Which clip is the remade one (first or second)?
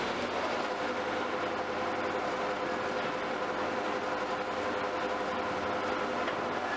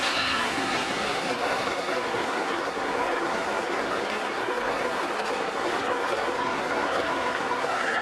second